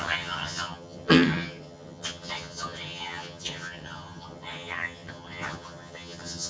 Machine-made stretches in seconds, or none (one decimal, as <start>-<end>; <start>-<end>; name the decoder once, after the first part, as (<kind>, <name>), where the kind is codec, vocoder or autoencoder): 0.0-6.5 (vocoder, HiFi-GAN)